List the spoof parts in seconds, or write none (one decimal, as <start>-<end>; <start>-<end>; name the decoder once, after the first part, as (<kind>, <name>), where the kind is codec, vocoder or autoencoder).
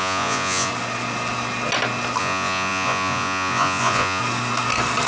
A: 0.0-0.7 (vocoder, Vocos); 2.2-4.2